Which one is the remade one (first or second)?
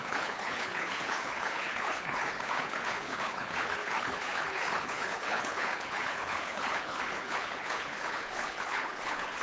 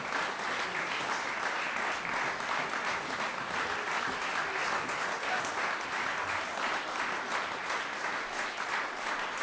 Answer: first